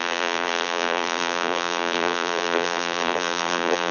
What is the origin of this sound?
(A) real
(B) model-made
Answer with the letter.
B